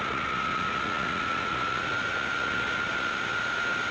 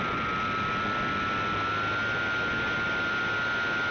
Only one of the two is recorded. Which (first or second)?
second